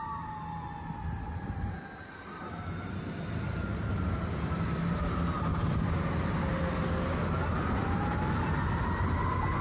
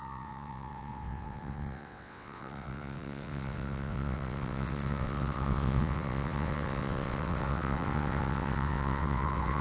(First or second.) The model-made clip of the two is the second